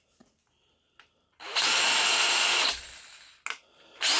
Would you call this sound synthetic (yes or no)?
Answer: no